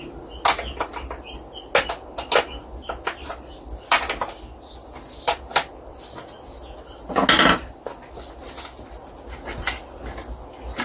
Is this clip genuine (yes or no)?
yes